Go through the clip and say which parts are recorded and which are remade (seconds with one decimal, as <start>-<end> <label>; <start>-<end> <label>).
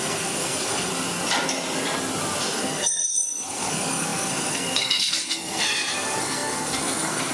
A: 0.0-0.9 remade; 0.9-2.4 recorded; 2.4-7.3 remade